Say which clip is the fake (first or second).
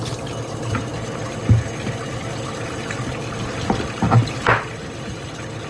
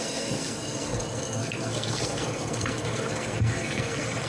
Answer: second